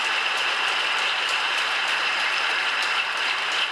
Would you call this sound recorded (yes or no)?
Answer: no